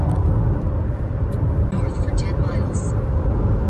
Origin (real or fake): fake